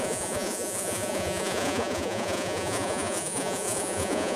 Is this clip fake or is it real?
fake